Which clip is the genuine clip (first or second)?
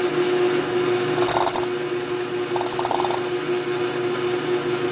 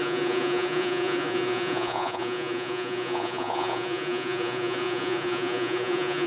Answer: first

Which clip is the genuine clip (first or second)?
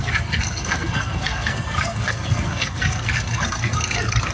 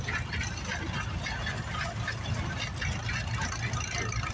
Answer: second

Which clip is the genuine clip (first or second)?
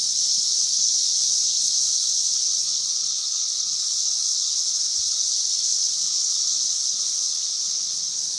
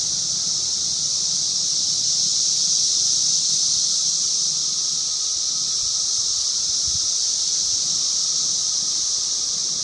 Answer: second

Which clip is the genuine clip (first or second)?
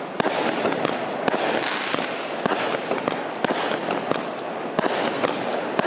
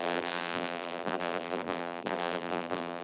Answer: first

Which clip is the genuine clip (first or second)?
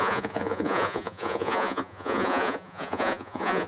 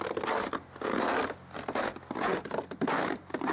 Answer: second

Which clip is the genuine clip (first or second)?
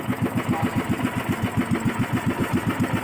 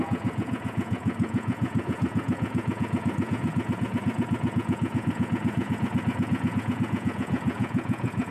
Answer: first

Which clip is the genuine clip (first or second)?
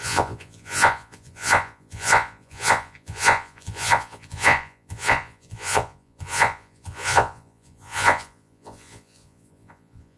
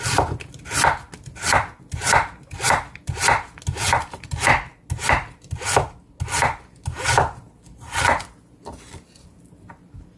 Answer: second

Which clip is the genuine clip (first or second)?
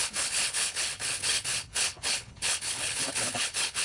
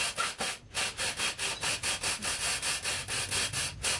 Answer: second